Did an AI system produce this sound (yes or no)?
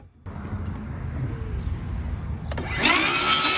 no